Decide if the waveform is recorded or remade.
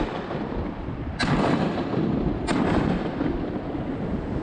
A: recorded